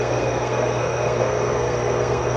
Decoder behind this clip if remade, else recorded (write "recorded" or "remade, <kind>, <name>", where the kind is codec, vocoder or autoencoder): remade, codec, SNAC